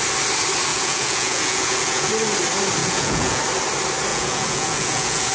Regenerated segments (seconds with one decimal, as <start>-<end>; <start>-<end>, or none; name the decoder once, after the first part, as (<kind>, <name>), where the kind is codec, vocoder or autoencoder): 0.7-2.1 (vocoder, Vocos); 2.8-3.4; 4.1-5.3